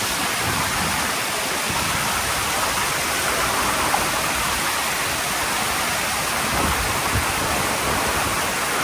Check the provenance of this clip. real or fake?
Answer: real